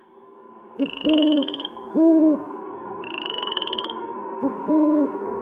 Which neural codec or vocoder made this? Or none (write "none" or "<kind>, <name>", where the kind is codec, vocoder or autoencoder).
codec, SNAC